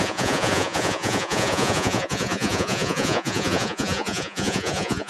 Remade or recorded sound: remade